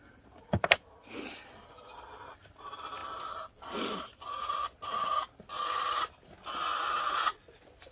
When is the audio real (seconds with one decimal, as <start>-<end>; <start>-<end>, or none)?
0.0-7.9